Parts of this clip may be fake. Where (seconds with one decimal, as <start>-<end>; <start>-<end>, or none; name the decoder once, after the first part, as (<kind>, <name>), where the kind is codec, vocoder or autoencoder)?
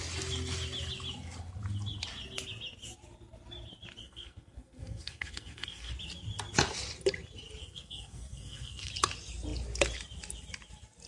4.0-5.9 (codec, SNAC); 7.6-8.9